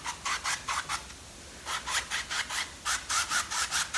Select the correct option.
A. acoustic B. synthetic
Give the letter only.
A